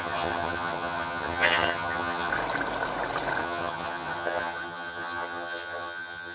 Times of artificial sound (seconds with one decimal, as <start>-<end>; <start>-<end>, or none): 0.0-2.3; 3.4-6.3